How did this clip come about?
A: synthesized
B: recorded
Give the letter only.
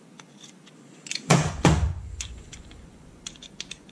A